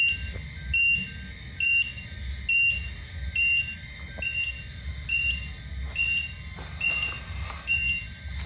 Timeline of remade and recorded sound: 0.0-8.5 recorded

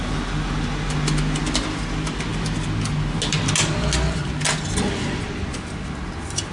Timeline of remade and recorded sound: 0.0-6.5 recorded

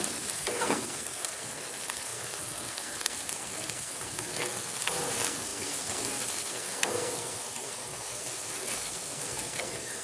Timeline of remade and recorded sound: 0.0-10.0 remade

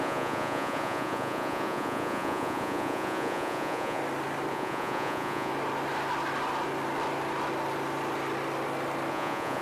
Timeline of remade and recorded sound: 0.0-4.0 remade; 4.0-4.5 recorded; 4.5-5.5 remade; 5.5-9.1 recorded; 9.1-9.6 remade

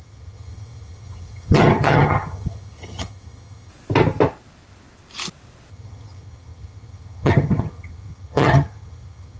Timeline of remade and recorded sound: 0.0-3.7 remade; 3.7-5.7 recorded; 5.7-9.4 remade

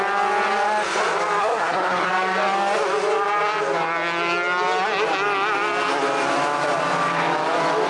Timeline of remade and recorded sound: 0.0-1.4 recorded; 1.4-2.1 remade; 2.1-7.9 recorded